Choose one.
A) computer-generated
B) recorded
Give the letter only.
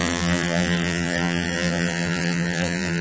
A